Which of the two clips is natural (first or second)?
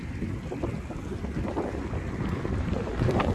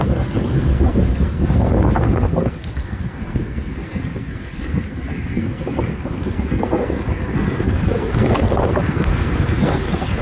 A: first